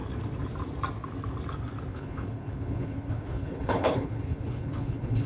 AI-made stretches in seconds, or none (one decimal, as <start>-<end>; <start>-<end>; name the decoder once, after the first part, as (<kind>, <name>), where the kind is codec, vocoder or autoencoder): 1.9-5.3 (codec, HILCodec)